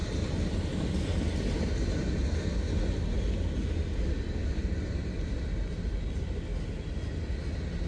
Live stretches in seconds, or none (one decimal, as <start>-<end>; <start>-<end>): 0.0-7.9